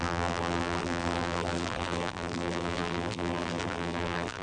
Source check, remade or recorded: remade